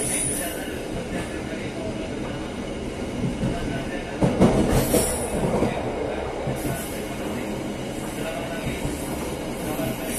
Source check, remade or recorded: recorded